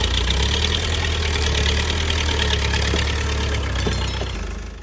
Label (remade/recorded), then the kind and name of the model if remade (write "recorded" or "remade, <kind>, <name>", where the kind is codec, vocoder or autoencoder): recorded